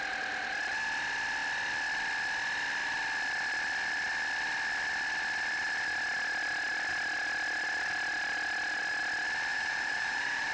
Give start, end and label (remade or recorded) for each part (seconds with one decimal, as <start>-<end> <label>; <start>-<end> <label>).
0.0-9.5 recorded; 9.5-10.5 remade